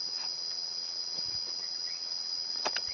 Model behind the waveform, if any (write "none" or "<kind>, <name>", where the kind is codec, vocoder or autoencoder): vocoder, WaveNeXt